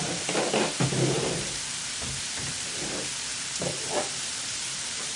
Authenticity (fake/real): fake